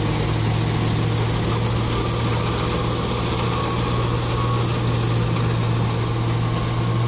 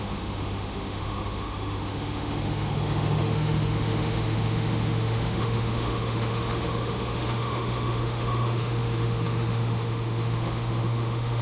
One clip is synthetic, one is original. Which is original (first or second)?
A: first